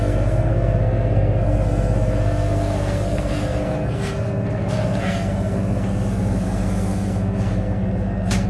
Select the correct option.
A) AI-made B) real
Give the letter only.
A